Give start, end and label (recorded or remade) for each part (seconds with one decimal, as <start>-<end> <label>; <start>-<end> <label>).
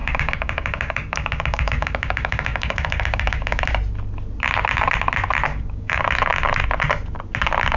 0.0-3.6 remade; 3.6-5.5 recorded; 5.5-6.0 remade; 6.0-7.8 recorded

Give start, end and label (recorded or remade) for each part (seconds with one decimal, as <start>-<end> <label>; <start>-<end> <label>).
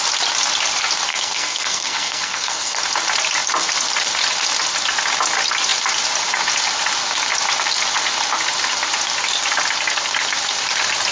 0.0-1.1 recorded; 1.1-2.8 remade; 2.8-11.1 recorded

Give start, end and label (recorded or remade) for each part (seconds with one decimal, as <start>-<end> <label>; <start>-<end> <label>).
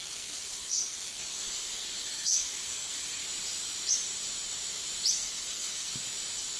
0.0-3.2 remade; 3.2-5.1 recorded; 5.1-5.9 remade; 5.9-6.6 recorded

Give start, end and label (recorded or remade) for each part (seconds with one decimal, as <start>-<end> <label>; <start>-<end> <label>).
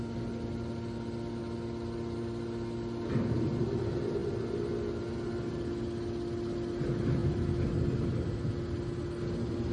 0.0-9.7 recorded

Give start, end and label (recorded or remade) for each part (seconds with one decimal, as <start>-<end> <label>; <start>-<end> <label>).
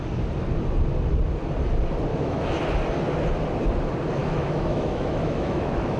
0.0-2.1 recorded; 2.1-2.6 remade; 2.6-4.2 recorded; 4.2-6.0 remade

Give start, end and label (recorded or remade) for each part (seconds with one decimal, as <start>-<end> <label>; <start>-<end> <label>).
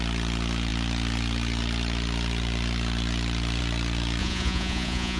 0.0-4.2 recorded; 4.2-5.2 remade